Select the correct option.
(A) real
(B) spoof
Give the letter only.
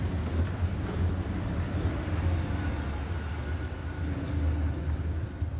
A